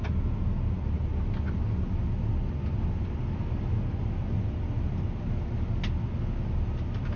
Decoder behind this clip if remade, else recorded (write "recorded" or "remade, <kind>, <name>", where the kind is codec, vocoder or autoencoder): recorded